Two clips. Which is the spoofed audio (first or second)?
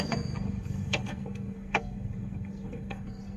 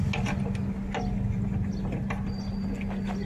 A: first